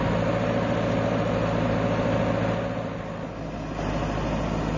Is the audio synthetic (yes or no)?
no